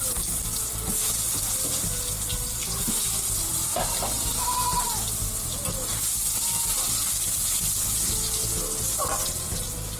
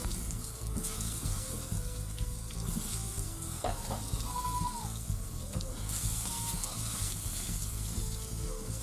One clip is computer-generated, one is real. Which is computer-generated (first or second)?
second